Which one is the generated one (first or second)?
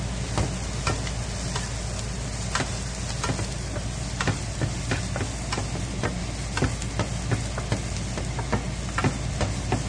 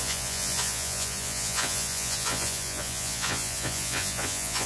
second